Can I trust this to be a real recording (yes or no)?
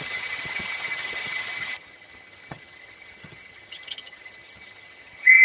no